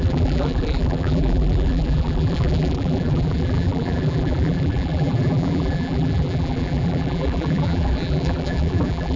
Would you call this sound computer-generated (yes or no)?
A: yes